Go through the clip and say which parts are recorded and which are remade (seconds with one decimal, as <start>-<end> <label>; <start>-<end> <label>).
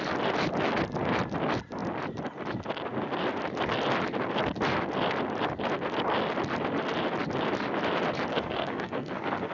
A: 0.0-8.3 recorded; 8.3-9.5 remade